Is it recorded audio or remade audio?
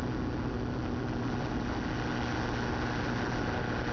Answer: recorded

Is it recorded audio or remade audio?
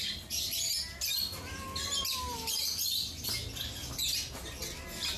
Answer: recorded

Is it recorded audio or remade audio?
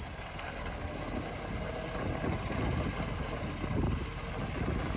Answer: recorded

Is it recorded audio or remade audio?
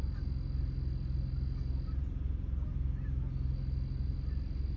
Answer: recorded